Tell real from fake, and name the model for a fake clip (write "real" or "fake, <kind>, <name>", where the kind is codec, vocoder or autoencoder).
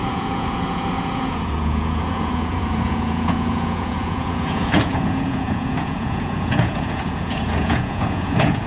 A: fake, vocoder, Vocos